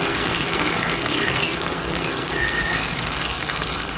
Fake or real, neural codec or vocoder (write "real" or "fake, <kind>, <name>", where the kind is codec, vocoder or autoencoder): fake, codec, SNAC